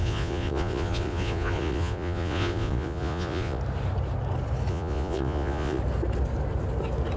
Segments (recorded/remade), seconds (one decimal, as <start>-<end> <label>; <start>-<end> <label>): 0.0-3.6 remade; 3.6-4.7 recorded; 4.7-5.8 remade; 5.8-7.2 recorded